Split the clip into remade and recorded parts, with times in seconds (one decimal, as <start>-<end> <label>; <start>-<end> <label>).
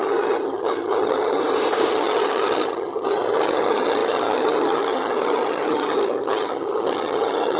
0.0-1.4 remade; 1.4-1.9 recorded; 1.9-7.6 remade